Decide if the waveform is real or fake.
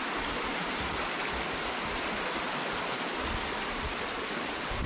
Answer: real